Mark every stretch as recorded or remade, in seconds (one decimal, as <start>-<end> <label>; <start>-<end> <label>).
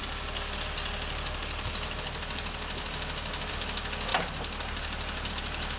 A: 0.0-5.8 recorded